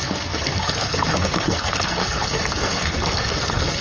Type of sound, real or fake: fake